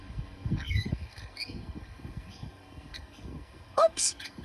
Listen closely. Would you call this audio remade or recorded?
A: remade